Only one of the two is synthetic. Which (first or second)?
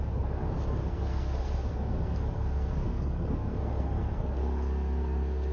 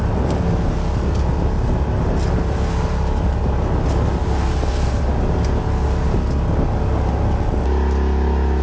first